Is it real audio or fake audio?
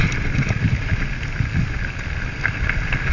real